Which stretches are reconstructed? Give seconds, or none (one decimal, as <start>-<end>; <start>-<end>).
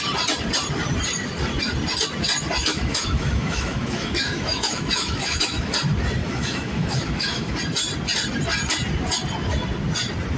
2.6-5.7; 6.2-7.5